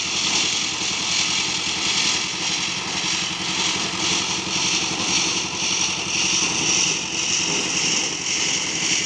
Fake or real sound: real